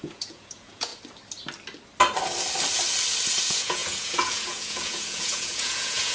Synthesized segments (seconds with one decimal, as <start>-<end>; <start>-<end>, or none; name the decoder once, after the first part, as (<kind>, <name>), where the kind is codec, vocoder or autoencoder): 0.0-0.9 (vocoder, Vocos); 3.4-6.1

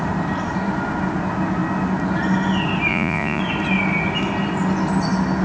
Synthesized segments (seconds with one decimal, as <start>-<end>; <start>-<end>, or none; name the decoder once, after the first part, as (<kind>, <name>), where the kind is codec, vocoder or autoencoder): 2.9-3.4 (vocoder, Vocos)

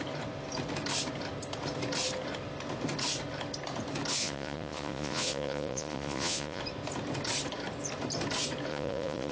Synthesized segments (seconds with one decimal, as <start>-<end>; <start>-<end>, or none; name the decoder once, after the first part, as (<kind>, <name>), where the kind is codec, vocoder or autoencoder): 4.2-6.6 (vocoder, Vocos); 8.7-9.3